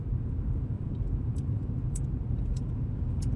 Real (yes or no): no